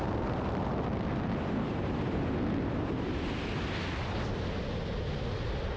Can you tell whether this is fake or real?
real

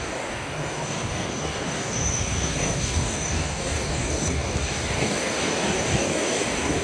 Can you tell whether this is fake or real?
fake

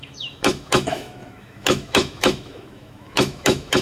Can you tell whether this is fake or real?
fake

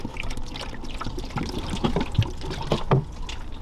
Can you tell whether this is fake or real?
real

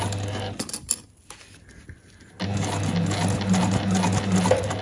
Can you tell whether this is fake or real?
real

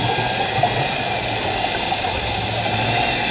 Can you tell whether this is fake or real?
real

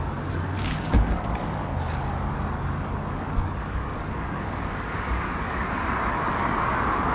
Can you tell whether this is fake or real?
fake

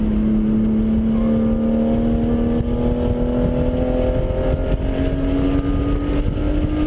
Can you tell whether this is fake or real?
real